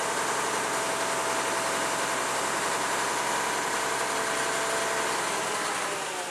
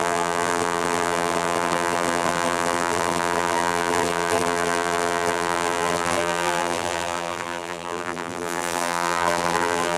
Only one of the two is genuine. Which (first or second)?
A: first